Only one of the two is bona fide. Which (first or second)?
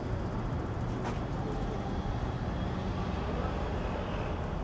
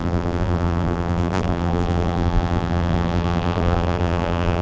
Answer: first